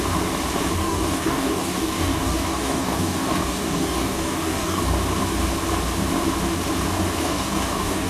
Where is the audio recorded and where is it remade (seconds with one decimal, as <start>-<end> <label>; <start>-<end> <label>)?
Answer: 0.0-0.8 recorded; 0.8-4.8 remade; 4.8-7.2 recorded; 7.2-8.1 remade